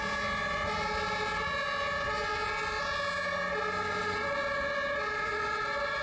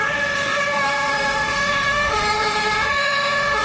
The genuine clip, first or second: first